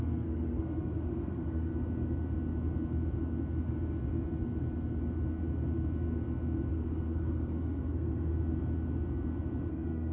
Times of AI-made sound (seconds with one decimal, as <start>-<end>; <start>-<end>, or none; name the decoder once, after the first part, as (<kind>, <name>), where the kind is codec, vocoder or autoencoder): 0.0-1.7 (codec, SNAC); 6.7-8.3; 9.7-10.1